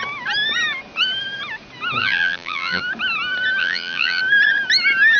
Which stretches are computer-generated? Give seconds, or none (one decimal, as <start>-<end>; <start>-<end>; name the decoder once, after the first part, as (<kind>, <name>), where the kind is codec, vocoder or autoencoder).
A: 2.0-2.8 (vocoder, BigVGAN v2); 3.6-4.2